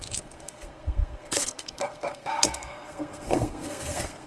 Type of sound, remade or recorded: remade